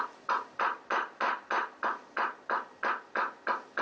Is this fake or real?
real